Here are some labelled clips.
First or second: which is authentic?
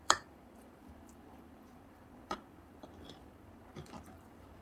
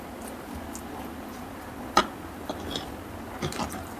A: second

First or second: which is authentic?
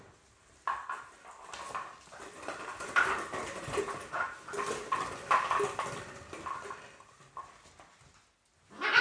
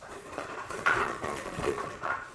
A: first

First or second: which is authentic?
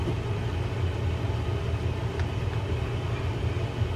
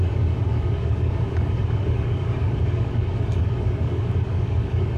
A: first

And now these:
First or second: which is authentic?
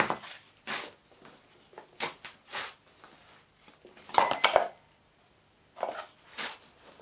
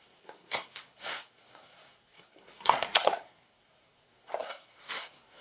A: first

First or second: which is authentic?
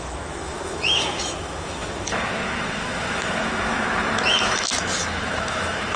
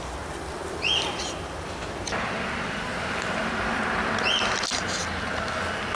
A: second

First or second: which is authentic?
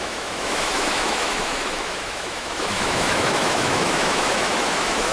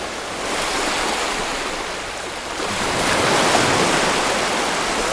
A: second